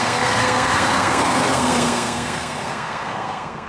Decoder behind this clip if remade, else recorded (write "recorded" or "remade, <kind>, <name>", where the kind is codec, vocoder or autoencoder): remade, codec, SNAC